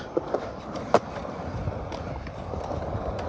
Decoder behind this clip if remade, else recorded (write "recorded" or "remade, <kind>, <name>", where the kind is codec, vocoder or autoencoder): recorded